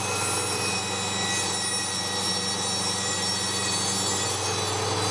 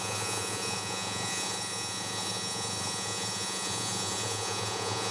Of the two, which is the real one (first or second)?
first